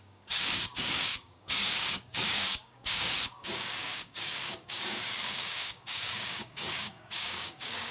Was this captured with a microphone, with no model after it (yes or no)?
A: no